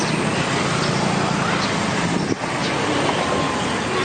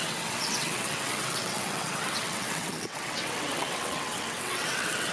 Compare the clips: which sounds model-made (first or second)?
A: second